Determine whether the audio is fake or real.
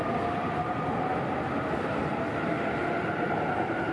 real